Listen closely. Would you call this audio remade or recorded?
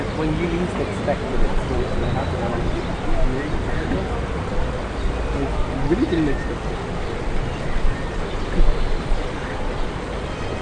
recorded